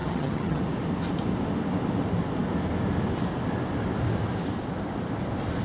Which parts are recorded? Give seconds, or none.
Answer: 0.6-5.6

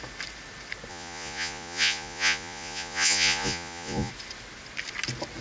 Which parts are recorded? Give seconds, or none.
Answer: 0.0-0.9; 4.1-5.4